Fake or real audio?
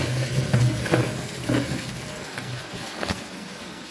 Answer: fake